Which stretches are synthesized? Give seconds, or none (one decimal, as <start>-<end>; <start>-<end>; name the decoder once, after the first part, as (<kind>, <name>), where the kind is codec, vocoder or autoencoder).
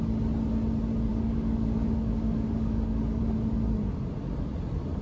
1.1-3.2 (codec, DAC)